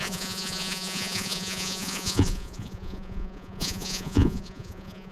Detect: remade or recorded remade